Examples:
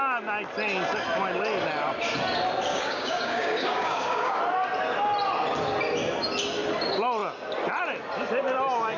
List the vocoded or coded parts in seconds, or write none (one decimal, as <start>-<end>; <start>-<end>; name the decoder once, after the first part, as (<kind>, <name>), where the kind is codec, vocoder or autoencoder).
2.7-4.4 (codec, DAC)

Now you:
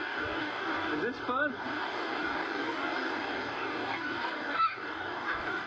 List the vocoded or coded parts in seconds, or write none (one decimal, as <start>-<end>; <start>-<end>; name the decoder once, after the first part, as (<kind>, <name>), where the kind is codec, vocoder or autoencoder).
0.0-0.9 (codec, DAC); 1.5-5.7

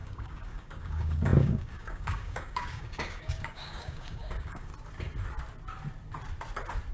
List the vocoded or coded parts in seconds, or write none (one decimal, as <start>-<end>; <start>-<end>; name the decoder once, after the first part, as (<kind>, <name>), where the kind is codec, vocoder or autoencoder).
0.0-4.7 (codec, DAC)

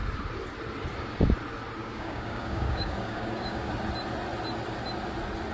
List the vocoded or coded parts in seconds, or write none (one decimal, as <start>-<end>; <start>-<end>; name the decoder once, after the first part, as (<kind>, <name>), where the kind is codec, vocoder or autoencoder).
1.8-3.7 (codec, DAC)

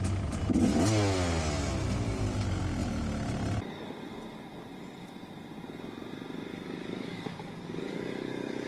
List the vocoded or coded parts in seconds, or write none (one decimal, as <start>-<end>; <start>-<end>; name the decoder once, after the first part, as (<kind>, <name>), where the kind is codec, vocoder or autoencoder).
6.5-8.7 (codec, DAC)

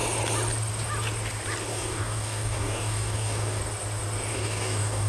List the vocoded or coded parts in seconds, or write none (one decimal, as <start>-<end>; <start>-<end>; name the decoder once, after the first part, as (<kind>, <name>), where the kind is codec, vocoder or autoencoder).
1.7-3.6 (codec, DAC); 4.3-5.1

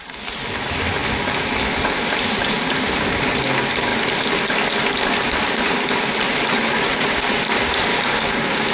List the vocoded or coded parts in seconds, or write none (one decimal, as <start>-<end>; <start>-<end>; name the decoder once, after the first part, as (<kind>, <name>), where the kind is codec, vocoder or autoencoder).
6.6-7.3 (codec, DAC); 7.9-8.7

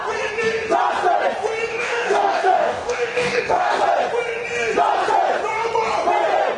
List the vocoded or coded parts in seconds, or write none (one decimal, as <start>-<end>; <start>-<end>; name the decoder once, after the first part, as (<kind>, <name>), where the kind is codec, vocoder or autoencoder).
1.7-3.8 (codec, DAC)